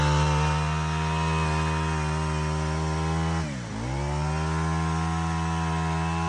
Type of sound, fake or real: real